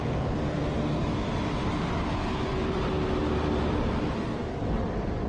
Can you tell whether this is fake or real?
fake